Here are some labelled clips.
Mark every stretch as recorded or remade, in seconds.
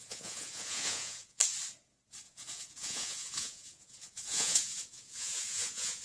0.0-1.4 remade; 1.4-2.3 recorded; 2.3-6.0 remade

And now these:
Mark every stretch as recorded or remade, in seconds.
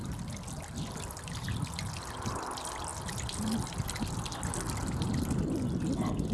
0.0-6.3 recorded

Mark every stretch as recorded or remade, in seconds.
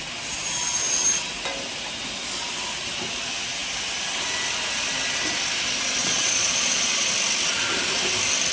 0.0-6.0 recorded; 6.0-7.1 remade; 7.1-8.5 recorded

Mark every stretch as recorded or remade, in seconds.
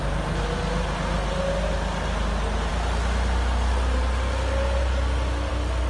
0.0-5.9 recorded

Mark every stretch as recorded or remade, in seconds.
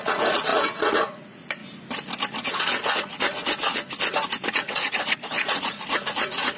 0.0-1.6 remade; 1.6-2.5 recorded; 2.5-3.4 remade; 3.4-4.5 recorded; 4.5-6.6 remade